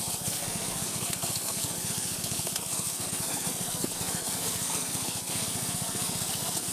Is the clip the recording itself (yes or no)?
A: no